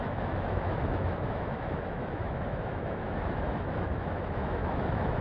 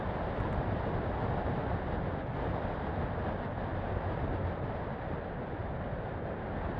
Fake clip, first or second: first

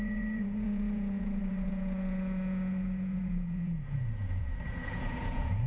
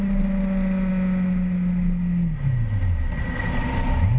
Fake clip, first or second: first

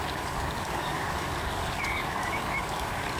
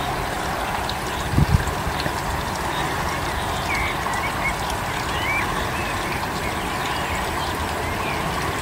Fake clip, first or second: first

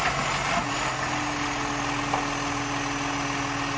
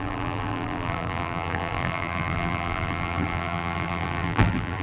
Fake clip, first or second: second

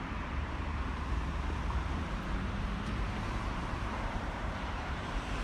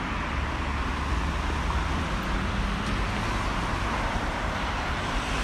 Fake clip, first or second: first